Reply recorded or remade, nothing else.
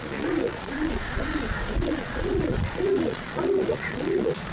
remade